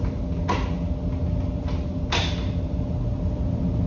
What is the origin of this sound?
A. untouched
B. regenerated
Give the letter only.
A